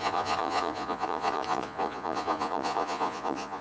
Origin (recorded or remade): remade